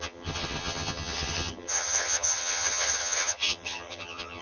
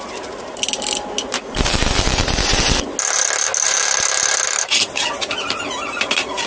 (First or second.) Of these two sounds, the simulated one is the first